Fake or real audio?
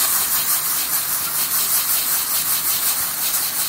real